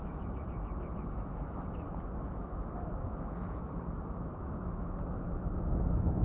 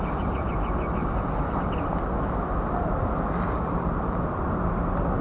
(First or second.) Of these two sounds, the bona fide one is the second